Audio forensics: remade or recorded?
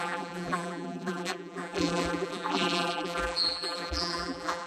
remade